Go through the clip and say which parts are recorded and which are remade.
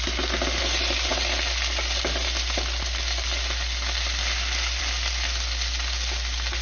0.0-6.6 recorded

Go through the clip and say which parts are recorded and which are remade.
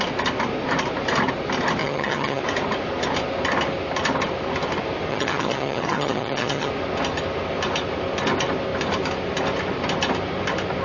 0.0-1.8 recorded; 1.8-2.4 remade; 2.4-5.1 recorded; 5.1-6.7 remade; 6.7-10.8 recorded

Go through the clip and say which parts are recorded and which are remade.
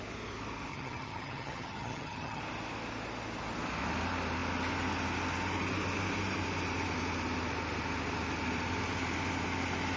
0.0-0.7 recorded; 0.7-2.4 remade; 2.4-10.0 recorded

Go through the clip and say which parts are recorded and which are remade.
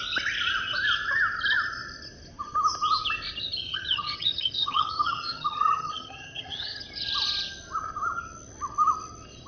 0.0-3.6 recorded; 3.6-6.8 remade; 6.8-9.5 recorded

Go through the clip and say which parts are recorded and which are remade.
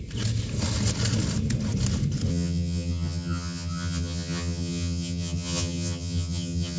0.0-2.3 recorded; 2.3-6.8 remade